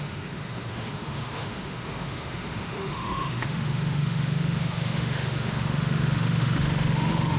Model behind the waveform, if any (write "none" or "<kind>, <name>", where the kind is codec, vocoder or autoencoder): autoencoder, DAC-VAE